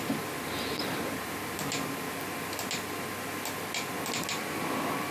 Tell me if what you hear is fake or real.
real